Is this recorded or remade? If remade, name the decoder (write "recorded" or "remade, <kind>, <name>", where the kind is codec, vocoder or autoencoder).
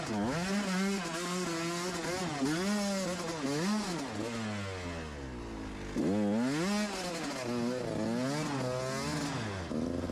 recorded